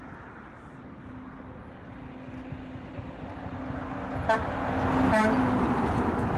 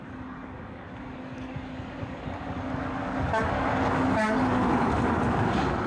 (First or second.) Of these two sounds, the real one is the first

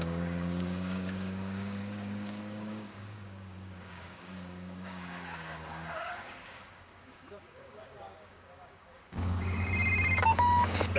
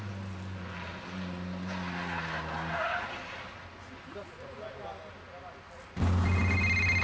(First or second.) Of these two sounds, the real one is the second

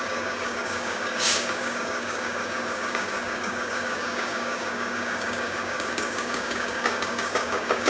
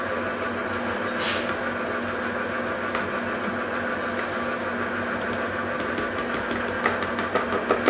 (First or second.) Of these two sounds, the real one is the second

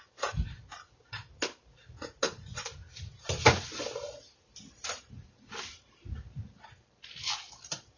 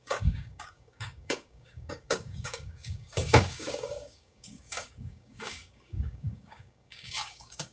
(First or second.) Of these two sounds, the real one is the first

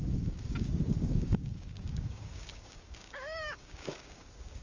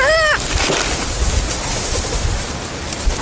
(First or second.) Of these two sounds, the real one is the second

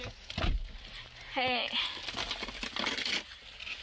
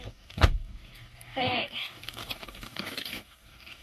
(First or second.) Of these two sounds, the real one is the first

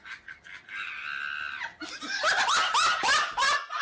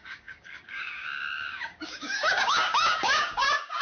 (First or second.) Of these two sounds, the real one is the first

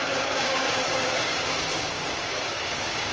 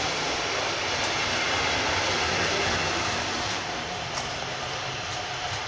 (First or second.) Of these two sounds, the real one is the second